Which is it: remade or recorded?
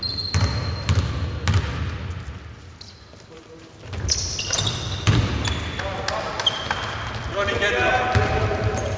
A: recorded